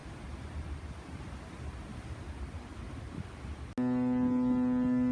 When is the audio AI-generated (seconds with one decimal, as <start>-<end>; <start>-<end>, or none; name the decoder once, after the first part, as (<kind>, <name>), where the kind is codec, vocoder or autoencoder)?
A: none